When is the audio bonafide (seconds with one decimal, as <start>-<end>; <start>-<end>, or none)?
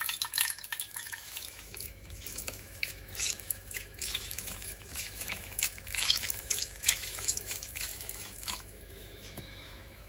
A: none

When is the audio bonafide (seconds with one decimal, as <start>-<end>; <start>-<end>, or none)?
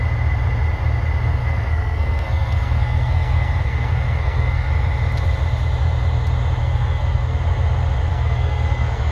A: 0.0-1.4; 4.7-6.6; 7.4-8.1